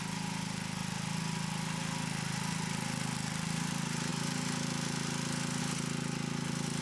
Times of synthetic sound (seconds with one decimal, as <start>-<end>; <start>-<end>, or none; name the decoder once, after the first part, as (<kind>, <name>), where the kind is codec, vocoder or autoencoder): none